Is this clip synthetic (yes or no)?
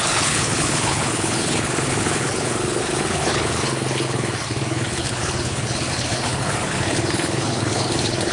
yes